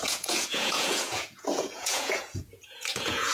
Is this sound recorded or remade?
remade